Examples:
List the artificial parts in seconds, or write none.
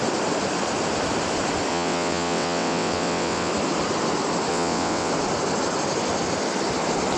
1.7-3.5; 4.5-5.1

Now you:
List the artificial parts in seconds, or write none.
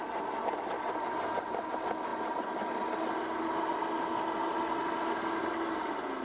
none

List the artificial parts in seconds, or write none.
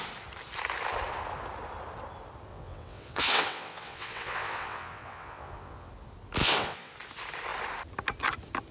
2.5-5.9; 6.4-6.9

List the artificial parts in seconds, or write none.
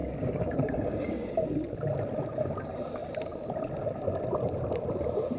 0.0-1.3